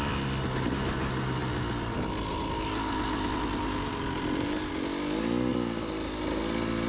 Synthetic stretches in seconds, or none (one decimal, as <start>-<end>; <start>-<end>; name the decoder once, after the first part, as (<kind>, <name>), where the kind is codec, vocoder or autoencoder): none